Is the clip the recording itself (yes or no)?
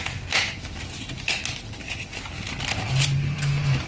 yes